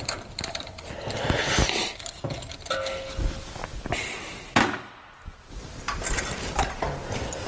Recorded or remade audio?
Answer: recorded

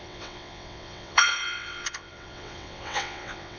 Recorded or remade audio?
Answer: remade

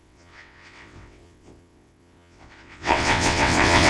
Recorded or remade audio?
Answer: remade